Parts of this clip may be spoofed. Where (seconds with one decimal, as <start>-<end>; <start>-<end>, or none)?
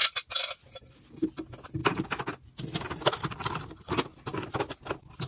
none